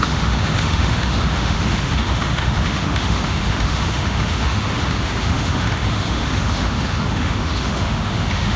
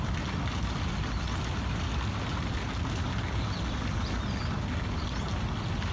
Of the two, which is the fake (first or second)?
first